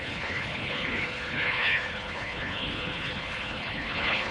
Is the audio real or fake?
fake